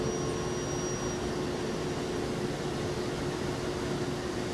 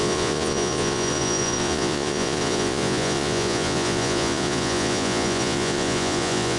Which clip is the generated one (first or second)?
second